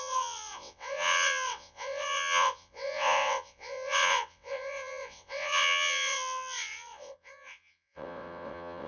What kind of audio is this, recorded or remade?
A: remade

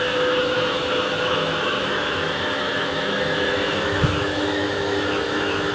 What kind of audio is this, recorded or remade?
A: remade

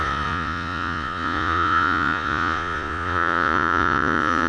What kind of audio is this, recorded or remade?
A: remade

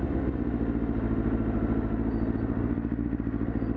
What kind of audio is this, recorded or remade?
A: recorded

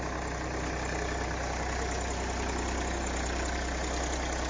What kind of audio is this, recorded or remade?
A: recorded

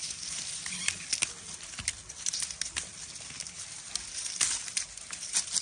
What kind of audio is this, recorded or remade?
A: recorded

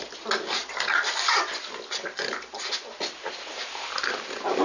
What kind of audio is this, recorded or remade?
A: recorded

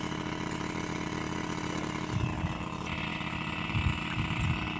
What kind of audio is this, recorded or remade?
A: recorded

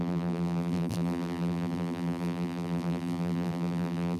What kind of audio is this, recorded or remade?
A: remade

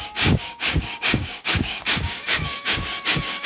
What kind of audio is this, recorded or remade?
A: remade